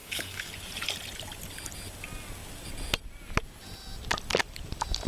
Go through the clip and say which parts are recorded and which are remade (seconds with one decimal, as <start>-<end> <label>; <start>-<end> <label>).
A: 0.0-0.5 remade; 0.5-5.1 recorded